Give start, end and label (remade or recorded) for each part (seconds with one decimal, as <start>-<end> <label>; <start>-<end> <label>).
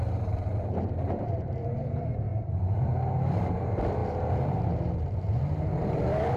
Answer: 0.0-6.4 remade